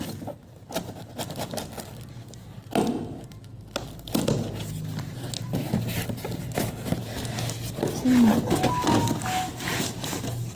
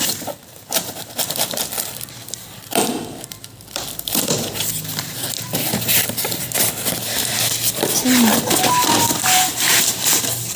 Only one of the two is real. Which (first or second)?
first